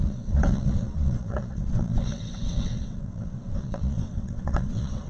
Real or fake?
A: fake